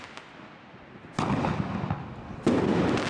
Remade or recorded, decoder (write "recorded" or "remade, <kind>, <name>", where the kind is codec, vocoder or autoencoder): recorded